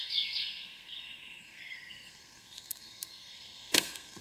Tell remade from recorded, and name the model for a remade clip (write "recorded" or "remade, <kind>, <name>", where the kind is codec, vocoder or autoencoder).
remade, codec, SNAC